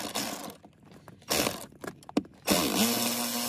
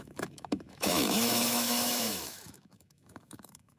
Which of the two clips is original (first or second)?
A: first